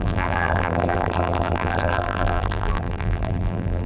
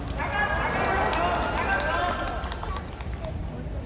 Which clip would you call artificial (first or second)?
first